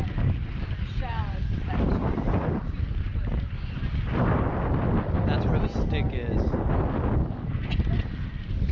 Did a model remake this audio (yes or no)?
no